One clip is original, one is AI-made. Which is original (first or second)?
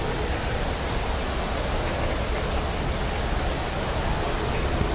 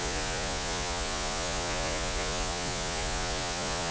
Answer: first